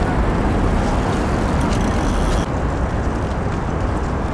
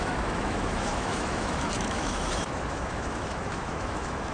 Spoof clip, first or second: second